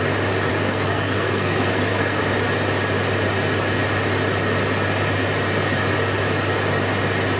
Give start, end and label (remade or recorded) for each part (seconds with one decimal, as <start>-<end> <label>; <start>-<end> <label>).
0.0-0.5 recorded; 0.5-2.2 remade; 2.2-7.4 recorded